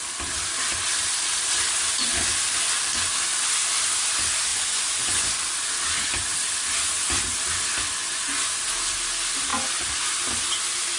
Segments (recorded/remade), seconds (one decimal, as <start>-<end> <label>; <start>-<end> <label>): 0.0-4.5 recorded; 4.5-5.4 remade; 5.4-8.0 recorded; 8.0-8.6 remade; 8.6-11.0 recorded